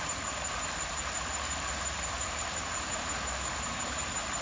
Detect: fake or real fake